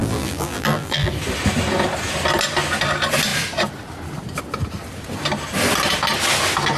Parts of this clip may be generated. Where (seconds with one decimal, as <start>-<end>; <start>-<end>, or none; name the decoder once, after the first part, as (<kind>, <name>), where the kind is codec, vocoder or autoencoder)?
0.0-1.1 (vocoder, BigVGAN v2)